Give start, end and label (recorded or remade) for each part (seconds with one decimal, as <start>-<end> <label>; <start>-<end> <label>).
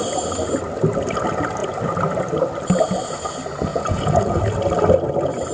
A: 0.0-3.7 recorded; 3.7-4.4 remade; 4.4-5.5 recorded